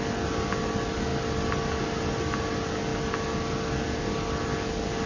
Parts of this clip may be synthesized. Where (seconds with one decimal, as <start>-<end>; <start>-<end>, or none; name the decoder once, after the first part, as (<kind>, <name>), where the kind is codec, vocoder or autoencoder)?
none

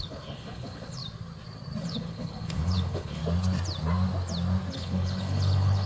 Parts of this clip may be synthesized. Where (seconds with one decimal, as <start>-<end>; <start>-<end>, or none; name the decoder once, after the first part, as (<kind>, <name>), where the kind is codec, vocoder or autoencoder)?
0.0-1.0 (codec, HILCodec); 1.8-3.2; 4.7-5.9

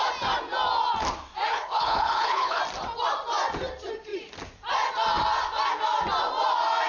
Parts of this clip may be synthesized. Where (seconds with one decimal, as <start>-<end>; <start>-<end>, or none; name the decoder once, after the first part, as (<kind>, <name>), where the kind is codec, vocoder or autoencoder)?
1.5-2.6 (codec, HILCodec)

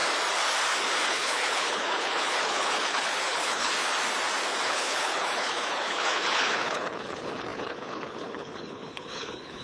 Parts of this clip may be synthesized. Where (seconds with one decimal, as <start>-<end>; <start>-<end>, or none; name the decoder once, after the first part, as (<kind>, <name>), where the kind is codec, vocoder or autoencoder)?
1.1-3.7 (codec, HILCodec); 4.6-9.6

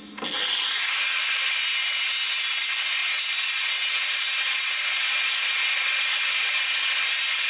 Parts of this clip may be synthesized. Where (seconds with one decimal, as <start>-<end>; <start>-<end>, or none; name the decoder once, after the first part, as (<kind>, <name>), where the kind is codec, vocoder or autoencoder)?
none